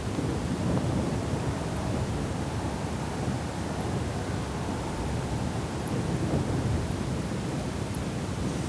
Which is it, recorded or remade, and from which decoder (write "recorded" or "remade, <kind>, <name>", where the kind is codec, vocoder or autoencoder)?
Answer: recorded